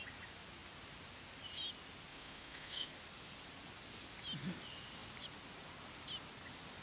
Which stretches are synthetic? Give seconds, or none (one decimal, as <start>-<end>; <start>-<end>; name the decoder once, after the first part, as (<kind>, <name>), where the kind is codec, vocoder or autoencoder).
2.1-2.9 (autoencoder, DAC-VAE)